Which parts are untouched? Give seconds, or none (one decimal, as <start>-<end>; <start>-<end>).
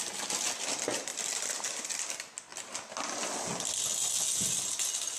0.0-1.1; 1.9-5.2